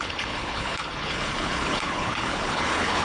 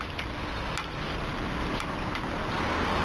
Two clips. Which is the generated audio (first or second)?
first